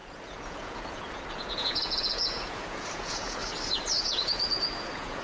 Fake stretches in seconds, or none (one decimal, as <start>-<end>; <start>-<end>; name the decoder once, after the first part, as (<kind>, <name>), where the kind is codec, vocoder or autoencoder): 0.0-3.4 (vocoder, Vocos); 4.0-5.2

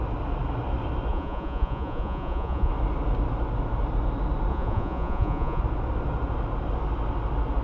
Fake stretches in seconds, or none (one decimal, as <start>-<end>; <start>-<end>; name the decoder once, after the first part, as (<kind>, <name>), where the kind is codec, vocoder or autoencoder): 1.1-2.7 (vocoder, Vocos); 4.5-5.6

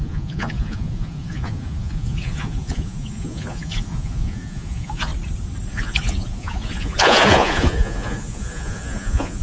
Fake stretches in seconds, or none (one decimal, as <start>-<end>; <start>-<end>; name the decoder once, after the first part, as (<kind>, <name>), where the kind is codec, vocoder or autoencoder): 0.0-5.1 (vocoder, Vocos); 5.7-9.4

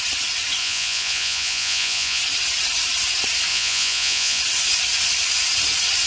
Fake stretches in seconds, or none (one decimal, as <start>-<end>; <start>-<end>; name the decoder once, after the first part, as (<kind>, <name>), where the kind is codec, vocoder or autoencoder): 0.6-2.2 (vocoder, Vocos); 3.5-4.4

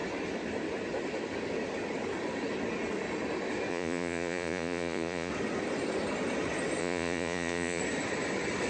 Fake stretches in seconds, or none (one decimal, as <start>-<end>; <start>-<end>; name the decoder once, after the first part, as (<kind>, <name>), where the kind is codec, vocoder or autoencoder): 3.7-5.3 (vocoder, Vocos); 6.8-7.8

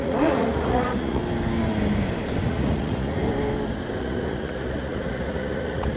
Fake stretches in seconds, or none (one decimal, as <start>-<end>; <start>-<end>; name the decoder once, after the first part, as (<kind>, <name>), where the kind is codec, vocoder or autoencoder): 0.0-1.2 (vocoder, Vocos); 2.5-3.2; 4.0-6.0

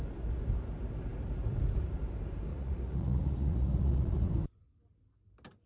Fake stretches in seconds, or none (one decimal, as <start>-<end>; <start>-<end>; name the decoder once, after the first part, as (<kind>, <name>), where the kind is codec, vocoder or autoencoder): 2.5-4.3 (vocoder, Vocos)

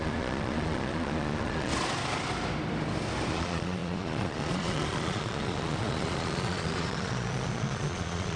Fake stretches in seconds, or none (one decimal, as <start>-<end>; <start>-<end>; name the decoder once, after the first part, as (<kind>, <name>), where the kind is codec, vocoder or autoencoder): 0.0-1.7 (vocoder, Vocos); 3.3-8.4